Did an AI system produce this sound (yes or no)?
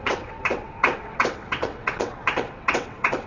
yes